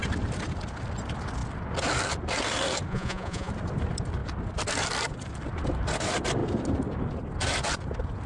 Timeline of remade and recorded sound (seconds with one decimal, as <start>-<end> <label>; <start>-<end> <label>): 0.0-2.9 recorded; 2.9-3.5 remade; 3.5-8.3 recorded